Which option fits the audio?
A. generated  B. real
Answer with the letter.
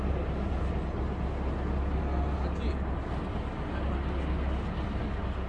B